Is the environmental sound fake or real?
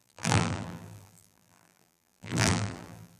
fake